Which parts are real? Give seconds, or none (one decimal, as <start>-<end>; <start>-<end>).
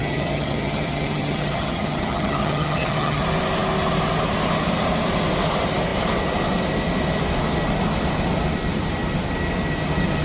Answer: 3.2-10.2